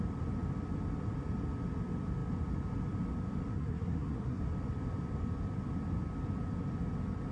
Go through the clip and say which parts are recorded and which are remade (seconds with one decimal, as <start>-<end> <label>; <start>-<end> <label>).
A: 0.0-3.5 recorded; 3.5-4.4 remade; 4.4-7.3 recorded